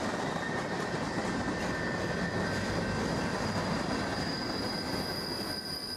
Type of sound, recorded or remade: recorded